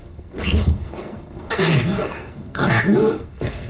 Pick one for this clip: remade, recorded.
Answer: remade